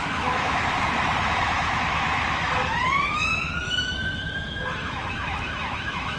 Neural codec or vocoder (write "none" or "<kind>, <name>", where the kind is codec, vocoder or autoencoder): autoencoder, DAC-VAE